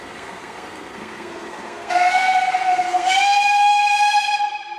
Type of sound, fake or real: fake